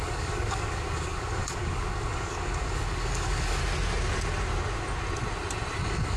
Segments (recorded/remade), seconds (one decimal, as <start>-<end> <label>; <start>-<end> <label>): 0.0-3.6 remade; 3.6-5.8 recorded; 5.8-6.2 remade